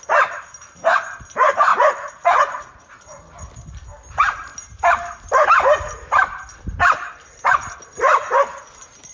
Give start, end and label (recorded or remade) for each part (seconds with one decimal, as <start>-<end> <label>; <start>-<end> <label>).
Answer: 0.0-1.7 recorded; 1.7-3.2 remade; 3.2-9.1 recorded